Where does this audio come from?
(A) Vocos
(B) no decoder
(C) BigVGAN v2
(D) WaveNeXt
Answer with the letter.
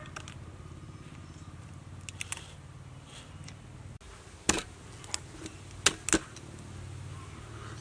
B